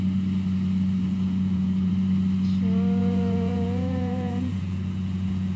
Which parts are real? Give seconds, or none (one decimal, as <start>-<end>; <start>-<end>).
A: 0.0-1.0; 1.9-3.0